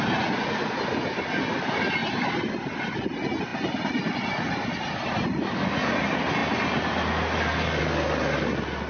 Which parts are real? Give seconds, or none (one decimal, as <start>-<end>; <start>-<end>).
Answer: 0.0-8.9